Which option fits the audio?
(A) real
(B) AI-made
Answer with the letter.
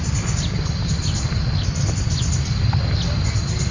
A